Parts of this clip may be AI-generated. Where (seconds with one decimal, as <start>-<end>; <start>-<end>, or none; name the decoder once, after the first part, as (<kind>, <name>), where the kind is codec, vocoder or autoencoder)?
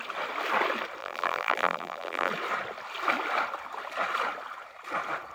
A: 1.0-2.3 (vocoder, BigVGAN v2)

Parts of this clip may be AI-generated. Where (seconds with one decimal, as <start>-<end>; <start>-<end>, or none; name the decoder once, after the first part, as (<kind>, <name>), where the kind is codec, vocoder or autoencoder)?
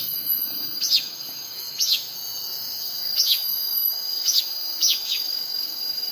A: 0.0-6.1 (autoencoder, DAC-VAE)